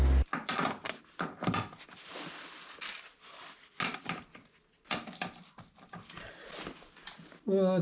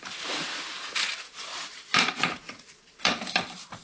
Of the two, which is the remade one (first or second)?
second